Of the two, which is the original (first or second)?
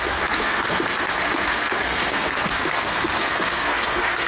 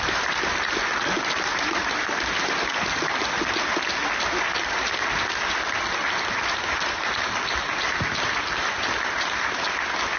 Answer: second